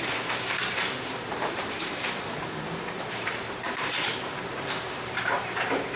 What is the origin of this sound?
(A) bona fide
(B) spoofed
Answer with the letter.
B